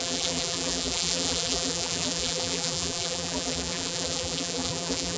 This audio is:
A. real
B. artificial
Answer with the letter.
B